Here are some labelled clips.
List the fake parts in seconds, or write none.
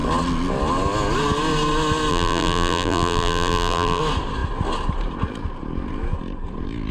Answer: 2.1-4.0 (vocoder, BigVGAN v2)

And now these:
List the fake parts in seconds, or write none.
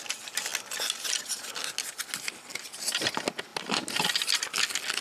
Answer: none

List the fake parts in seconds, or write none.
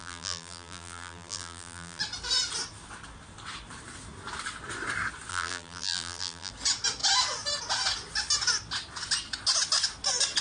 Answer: 0.0-2.0 (vocoder, BigVGAN v2); 5.3-6.5